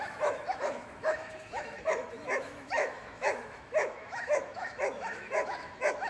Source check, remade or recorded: remade